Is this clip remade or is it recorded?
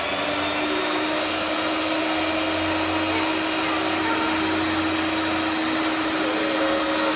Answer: recorded